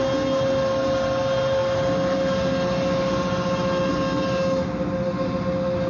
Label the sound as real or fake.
real